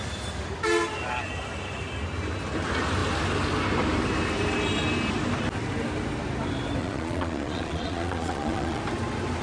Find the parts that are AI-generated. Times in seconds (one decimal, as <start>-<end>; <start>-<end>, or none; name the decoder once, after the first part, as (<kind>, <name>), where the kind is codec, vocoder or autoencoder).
6.8-8.8 (vocoder, Vocos)